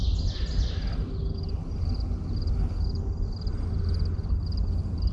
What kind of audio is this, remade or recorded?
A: recorded